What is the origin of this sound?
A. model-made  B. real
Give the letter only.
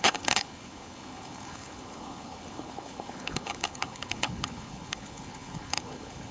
A